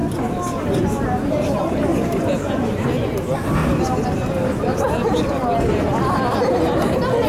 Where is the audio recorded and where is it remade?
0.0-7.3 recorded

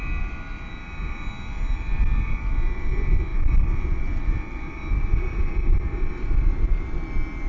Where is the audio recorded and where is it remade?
0.0-7.5 recorded

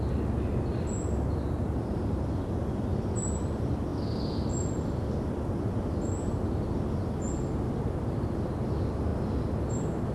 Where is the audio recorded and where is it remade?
0.0-10.1 recorded

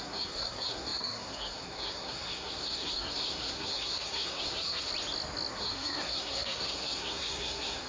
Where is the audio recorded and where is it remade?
0.0-4.9 remade; 4.9-5.5 recorded; 5.5-7.9 remade

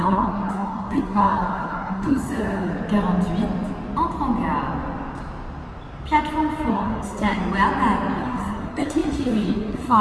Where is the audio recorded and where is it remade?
0.0-2.7 remade; 2.7-6.7 recorded; 6.7-7.4 remade; 7.4-8.2 recorded; 8.2-10.0 remade

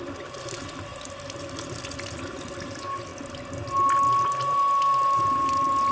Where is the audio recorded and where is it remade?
0.0-5.9 recorded